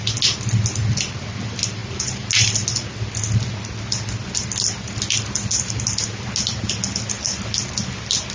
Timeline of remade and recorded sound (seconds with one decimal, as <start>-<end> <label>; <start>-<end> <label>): 0.0-8.3 recorded